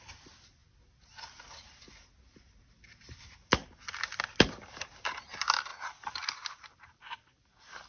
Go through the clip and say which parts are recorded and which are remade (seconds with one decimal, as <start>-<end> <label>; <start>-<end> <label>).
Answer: 0.0-5.7 recorded; 5.7-7.1 remade; 7.1-7.9 recorded